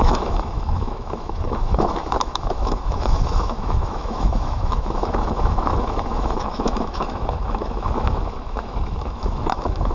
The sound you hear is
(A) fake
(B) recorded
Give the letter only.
A